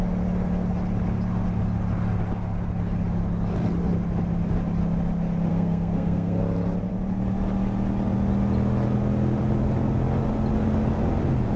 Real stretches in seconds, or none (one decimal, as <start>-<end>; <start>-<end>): 0.0-5.5; 6.4-11.6